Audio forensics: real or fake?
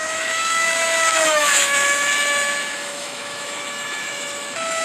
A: fake